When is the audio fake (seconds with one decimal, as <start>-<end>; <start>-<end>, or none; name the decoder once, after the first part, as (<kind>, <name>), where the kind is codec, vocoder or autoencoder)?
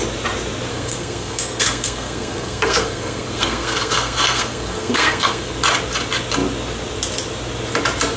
0.7-5.5 (codec, SNAC)